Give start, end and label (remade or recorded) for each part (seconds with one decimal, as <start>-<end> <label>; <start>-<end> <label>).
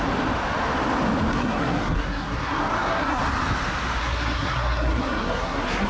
0.0-1.3 recorded; 1.3-3.2 remade; 3.2-4.0 recorded; 4.0-5.9 remade